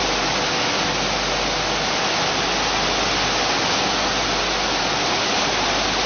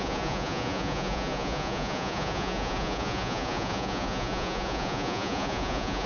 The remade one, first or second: second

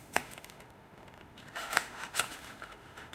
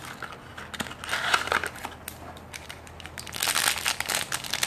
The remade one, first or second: first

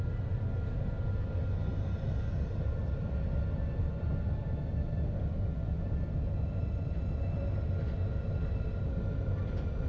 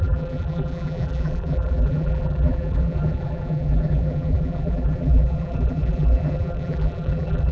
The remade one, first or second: second